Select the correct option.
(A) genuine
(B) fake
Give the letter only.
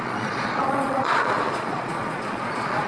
B